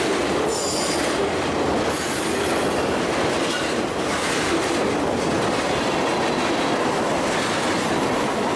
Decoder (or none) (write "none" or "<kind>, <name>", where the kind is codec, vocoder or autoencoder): none